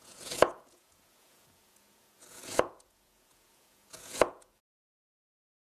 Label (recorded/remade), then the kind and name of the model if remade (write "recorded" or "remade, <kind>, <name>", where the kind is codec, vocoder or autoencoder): remade, vocoder, Vocos